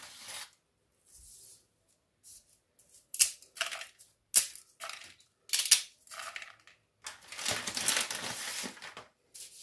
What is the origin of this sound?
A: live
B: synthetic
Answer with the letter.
A